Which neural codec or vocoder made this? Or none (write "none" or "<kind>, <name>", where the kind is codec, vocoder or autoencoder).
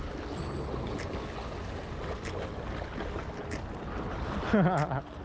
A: none